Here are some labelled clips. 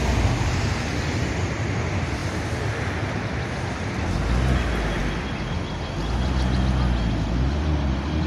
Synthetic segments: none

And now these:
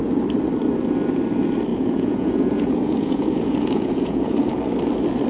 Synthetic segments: 1.7-4.5 (vocoder, Vocos)